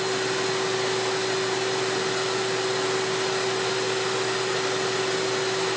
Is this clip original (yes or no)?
yes